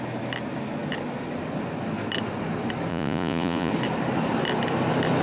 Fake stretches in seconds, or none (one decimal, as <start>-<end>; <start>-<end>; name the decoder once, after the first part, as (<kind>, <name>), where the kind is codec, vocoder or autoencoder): 2.9-3.7 (vocoder, Vocos)